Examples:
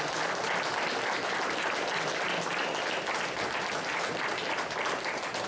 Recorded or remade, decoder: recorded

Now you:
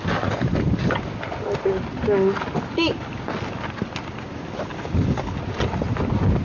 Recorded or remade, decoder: recorded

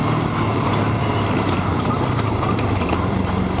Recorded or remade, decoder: remade, vocoder, BigVGAN v2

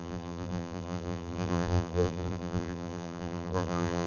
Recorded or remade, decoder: remade, vocoder, BigVGAN v2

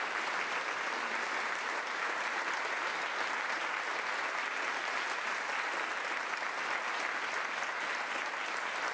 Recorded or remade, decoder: recorded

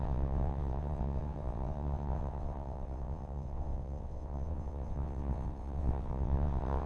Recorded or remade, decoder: remade, vocoder, WaveNeXt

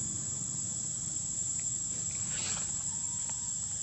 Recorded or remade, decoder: recorded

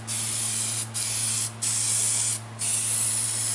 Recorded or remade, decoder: recorded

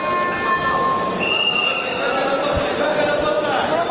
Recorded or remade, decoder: recorded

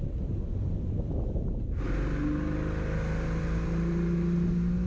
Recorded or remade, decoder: recorded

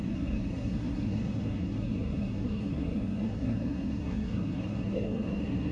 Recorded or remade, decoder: remade, codec, SNAC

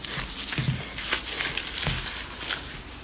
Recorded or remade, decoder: recorded